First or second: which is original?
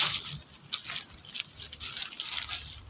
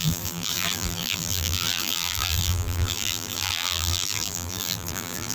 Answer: first